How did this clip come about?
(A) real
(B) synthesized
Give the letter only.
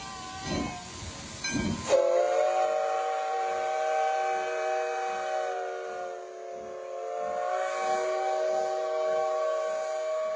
A